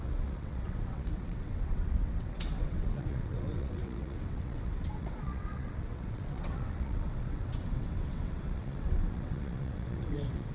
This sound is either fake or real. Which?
fake